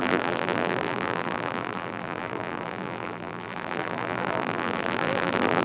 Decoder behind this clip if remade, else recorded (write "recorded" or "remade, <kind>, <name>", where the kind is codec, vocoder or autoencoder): remade, vocoder, BigVGAN v2